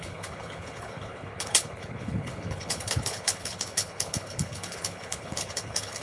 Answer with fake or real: fake